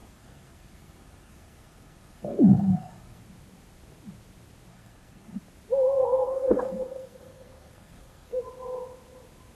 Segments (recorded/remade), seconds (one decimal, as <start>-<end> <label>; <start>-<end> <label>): 0.0-3.2 remade; 3.2-4.7 recorded; 4.7-5.4 remade; 5.4-6.0 recorded; 6.0-8.4 remade; 8.4-9.6 recorded